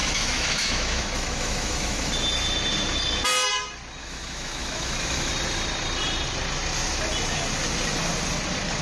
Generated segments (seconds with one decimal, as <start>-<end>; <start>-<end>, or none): 0.0-2.1; 4.0-5.3